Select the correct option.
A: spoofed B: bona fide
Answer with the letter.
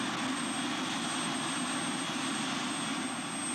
B